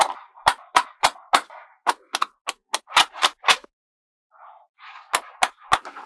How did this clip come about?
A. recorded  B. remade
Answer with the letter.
A